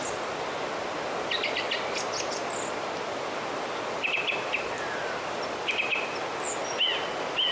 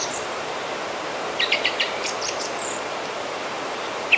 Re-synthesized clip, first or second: second